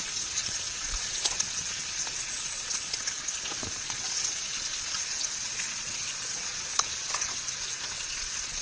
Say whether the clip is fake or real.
fake